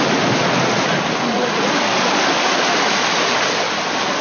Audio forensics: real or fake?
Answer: real